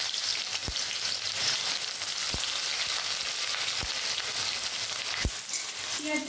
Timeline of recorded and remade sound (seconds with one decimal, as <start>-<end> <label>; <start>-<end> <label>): 0.0-6.3 recorded